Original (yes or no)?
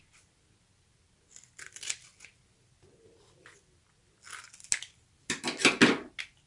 yes